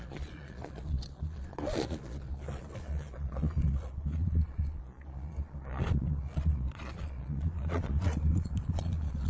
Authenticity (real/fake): fake